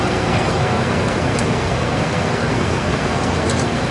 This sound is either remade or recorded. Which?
remade